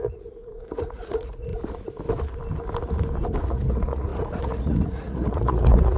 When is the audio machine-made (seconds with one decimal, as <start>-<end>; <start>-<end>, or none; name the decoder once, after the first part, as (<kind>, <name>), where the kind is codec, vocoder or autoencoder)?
0.0-1.5 (vocoder, Vocos); 3.4-6.0